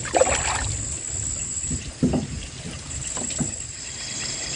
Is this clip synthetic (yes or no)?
no